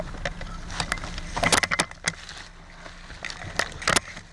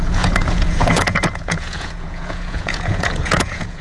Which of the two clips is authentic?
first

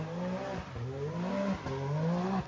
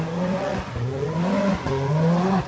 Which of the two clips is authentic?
first